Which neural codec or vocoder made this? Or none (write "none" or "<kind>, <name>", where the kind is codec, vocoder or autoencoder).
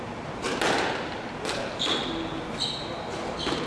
none